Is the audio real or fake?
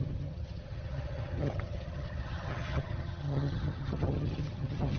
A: fake